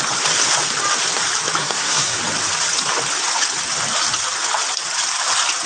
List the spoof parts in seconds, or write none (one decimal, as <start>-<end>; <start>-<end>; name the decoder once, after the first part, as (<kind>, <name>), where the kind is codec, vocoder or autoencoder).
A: 1.6-2.2 (codec, SNAC)